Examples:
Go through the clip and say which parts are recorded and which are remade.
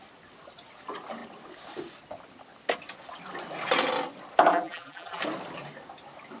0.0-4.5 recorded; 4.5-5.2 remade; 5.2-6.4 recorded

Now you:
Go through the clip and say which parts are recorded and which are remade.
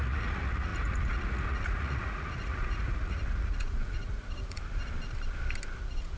0.0-4.8 remade; 4.8-5.8 recorded; 5.8-6.2 remade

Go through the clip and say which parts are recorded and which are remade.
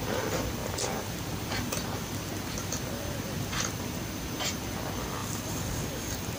0.0-0.6 recorded; 0.6-4.2 remade; 4.2-5.2 recorded; 5.2-5.9 remade; 5.9-6.4 recorded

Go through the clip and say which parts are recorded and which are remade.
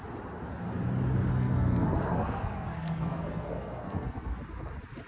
0.0-1.3 recorded; 1.3-4.4 remade; 4.4-5.1 recorded